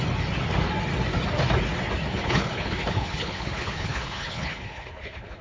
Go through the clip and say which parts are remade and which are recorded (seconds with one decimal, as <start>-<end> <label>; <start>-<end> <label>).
0.0-2.1 recorded; 2.1-5.4 remade